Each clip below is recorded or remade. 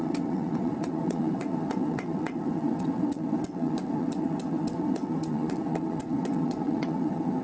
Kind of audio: remade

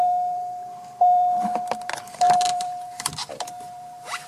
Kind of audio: remade